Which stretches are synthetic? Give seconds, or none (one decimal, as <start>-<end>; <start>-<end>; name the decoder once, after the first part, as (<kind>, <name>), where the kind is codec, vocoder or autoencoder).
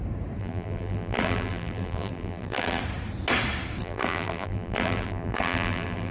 0.4-2.8 (vocoder, BigVGAN v2); 3.8-6.1